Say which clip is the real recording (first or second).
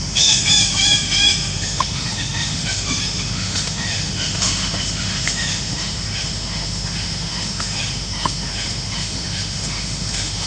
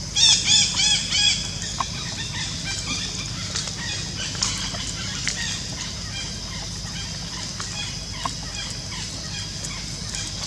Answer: second